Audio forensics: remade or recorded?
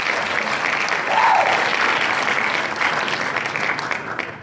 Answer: recorded